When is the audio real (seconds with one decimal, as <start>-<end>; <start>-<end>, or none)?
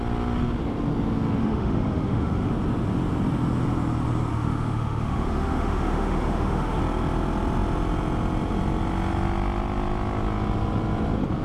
0.0-1.4; 2.5-4.3; 6.8-11.4